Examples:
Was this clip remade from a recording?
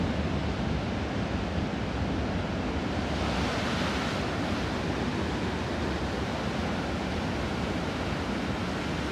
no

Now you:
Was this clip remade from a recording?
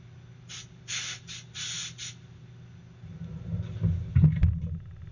no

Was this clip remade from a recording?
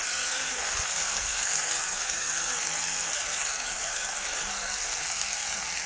yes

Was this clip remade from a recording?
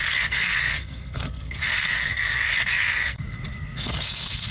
yes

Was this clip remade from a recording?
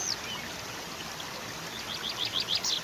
no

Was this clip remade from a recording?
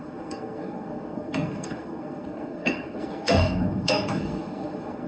yes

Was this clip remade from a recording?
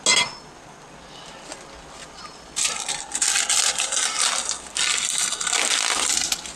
no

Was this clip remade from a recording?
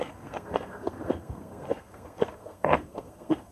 yes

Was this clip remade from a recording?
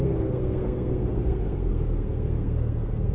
yes